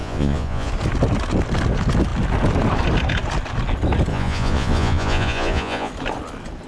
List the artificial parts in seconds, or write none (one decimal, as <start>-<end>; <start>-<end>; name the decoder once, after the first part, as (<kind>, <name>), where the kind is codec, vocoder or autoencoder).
0.0-0.7 (vocoder, Vocos); 4.1-5.9